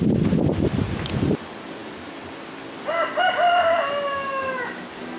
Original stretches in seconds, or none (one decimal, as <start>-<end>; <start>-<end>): 0.0-5.2